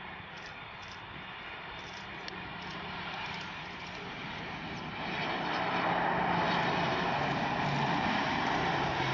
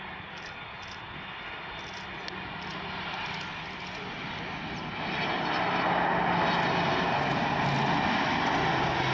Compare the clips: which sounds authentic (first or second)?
second